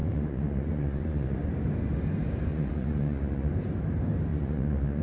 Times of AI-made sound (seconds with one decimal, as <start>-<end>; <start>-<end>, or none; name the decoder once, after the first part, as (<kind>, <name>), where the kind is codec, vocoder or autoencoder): 0.0-1.5 (vocoder, Vocos); 2.5-3.5; 4.3-5.0